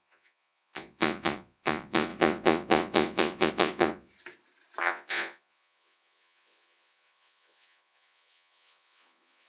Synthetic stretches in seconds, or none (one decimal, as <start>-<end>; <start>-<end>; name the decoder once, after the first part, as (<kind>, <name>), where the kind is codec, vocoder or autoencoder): 0.0-4.1 (vocoder, Vocos); 4.8-9.5